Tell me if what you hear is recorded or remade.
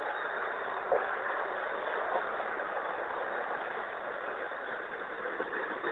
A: recorded